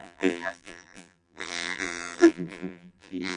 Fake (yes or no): yes